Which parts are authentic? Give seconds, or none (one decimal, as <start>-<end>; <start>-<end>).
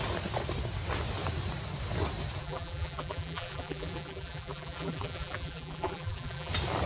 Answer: 0.0-2.4; 6.5-6.9